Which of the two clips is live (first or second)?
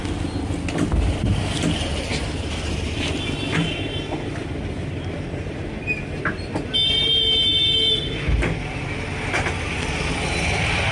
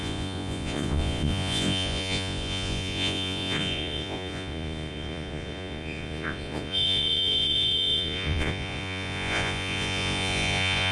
first